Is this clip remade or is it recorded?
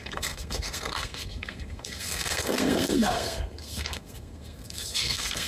remade